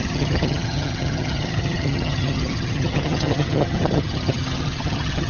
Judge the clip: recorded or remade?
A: remade